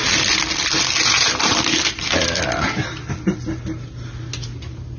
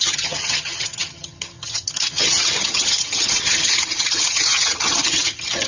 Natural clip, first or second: first